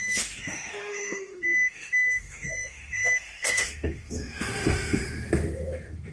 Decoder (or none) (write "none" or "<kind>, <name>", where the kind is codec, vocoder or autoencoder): autoencoder, DAC-VAE